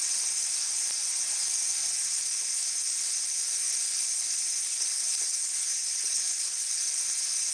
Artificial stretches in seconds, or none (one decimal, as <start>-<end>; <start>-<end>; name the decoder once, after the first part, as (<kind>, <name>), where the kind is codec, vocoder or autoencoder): 4.6-6.7 (codec, HILCodec)